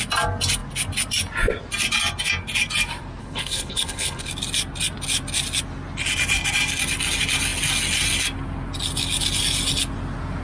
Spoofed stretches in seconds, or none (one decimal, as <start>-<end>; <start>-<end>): 3.2-4.3